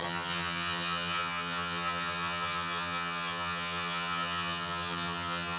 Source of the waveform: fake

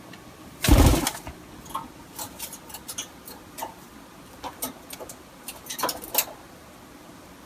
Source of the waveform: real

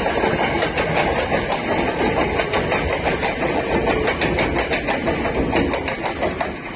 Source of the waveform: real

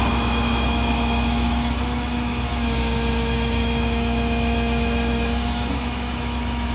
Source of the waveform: fake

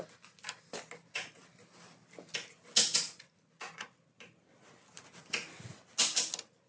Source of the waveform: real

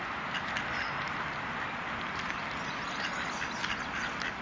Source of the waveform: real